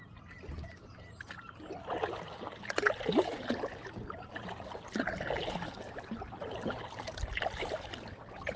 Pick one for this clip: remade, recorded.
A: recorded